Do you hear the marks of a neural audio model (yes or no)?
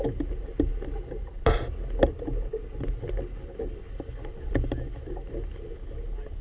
no